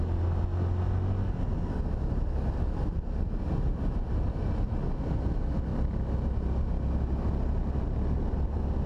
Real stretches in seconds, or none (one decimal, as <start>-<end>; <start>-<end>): 0.0-8.9